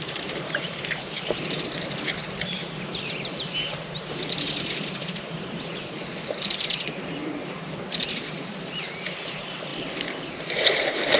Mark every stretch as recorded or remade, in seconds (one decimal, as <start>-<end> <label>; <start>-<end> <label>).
0.0-9.7 remade; 9.7-10.4 recorded; 10.4-11.2 remade